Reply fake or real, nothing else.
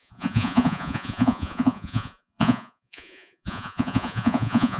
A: fake